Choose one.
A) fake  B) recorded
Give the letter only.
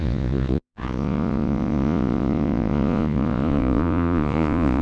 A